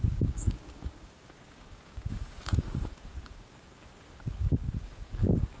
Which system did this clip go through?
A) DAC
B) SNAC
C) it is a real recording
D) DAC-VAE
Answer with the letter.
A